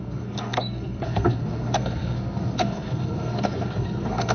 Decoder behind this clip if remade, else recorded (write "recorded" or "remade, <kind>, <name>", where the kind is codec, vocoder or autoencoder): remade, codec, SNAC